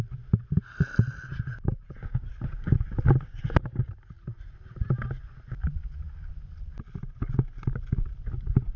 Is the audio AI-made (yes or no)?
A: no